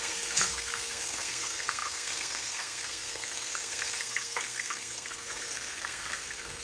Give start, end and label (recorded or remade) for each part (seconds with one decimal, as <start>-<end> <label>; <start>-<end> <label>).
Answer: 0.0-6.6 remade